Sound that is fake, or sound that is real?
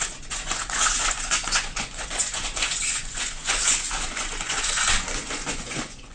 fake